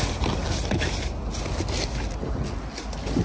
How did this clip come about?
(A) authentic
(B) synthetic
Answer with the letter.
A